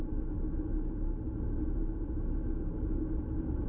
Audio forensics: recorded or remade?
recorded